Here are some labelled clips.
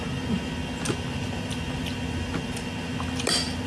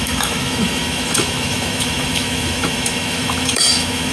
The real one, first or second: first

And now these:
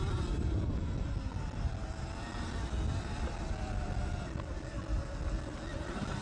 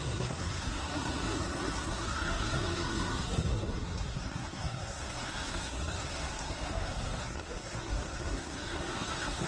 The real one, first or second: first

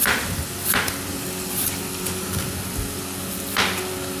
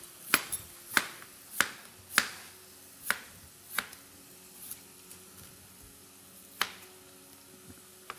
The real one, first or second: first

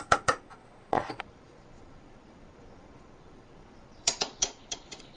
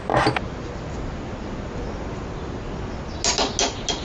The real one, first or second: second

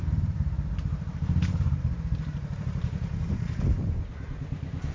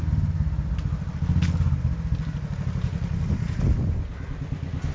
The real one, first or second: second